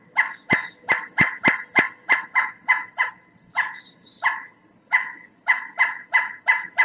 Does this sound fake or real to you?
real